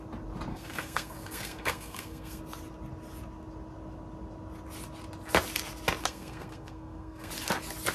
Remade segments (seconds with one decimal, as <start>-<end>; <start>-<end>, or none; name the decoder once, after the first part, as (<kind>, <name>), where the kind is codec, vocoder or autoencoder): 0.5-2.4 (codec, SNAC); 6.0-7.3